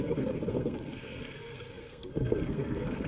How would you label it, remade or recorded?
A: remade